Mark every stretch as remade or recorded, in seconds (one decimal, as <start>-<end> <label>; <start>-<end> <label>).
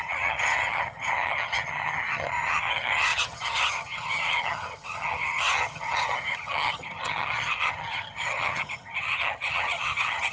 0.0-10.3 remade